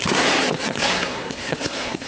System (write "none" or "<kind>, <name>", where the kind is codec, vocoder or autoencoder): codec, SNAC